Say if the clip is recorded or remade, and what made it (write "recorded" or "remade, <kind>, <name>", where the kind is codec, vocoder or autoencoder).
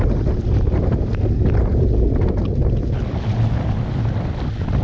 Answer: recorded